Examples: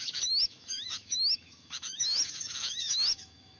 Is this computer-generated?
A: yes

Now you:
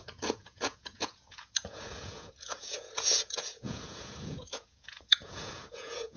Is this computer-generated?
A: yes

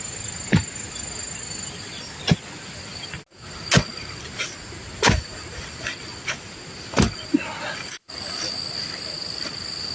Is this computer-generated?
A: no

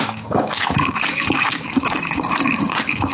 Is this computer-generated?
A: yes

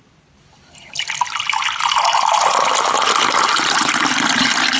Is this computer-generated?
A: no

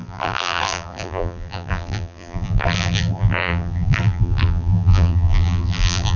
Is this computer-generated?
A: yes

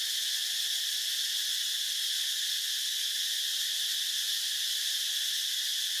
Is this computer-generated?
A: no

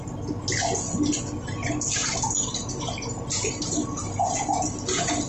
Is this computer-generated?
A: no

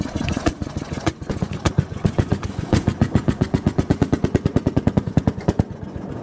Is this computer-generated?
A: yes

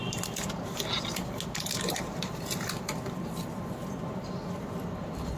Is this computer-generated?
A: no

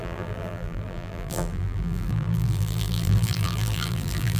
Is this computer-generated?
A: yes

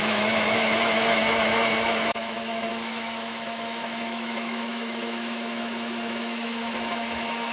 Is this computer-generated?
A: yes